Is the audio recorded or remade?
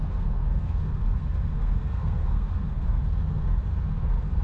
remade